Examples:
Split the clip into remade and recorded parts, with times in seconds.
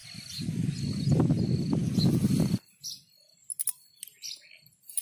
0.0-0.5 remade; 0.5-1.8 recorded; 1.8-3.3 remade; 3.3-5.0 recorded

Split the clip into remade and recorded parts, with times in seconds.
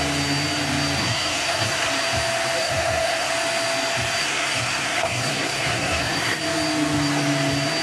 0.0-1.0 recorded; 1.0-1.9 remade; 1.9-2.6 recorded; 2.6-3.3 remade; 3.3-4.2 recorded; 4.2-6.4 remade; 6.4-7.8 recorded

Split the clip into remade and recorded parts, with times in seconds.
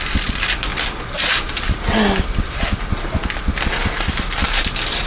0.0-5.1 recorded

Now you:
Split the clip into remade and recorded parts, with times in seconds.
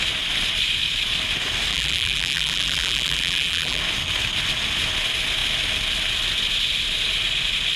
0.0-1.7 recorded; 1.7-3.8 remade; 3.8-7.8 recorded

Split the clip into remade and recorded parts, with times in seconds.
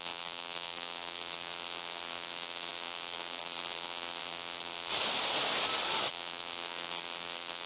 0.0-4.9 remade; 4.9-6.1 recorded; 6.1-7.7 remade